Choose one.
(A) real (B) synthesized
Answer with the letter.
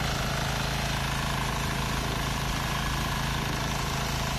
A